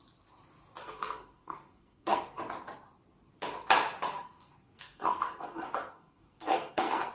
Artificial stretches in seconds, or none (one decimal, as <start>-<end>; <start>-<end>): 0.8-2.4; 4.1-7.1